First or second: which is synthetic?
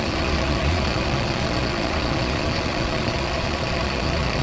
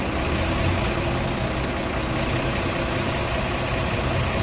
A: first